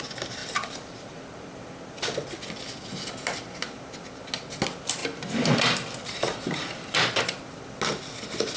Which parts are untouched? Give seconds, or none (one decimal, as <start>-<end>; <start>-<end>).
0.0-0.4; 1.3-5.0; 7.2-8.6